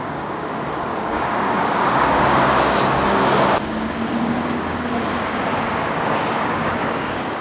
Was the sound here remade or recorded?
remade